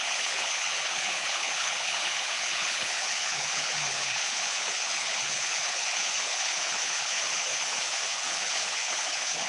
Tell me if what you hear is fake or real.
fake